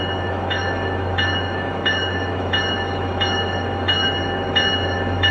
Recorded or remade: remade